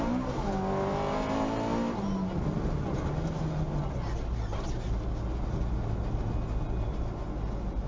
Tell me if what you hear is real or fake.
real